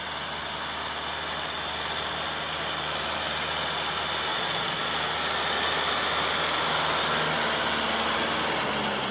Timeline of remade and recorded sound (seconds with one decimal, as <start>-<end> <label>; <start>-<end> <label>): 0.0-4.3 recorded; 4.3-4.9 remade; 4.9-9.1 recorded